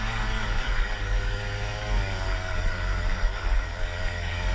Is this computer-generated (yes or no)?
yes